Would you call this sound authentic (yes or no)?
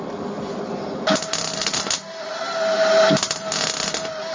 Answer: yes